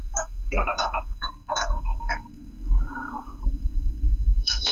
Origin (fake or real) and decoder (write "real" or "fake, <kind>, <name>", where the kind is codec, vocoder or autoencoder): fake, codec, SNAC